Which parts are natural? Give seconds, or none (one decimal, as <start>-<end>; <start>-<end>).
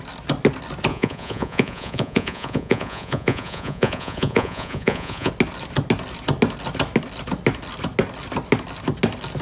0.0-0.9; 5.3-9.4